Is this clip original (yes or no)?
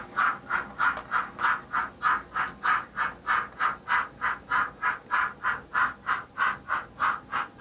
yes